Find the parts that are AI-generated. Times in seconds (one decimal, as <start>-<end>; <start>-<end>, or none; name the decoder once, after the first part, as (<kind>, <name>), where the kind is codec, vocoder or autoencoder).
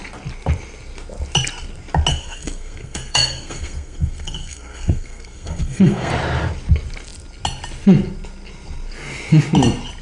2.1-6.1 (codec, SNAC)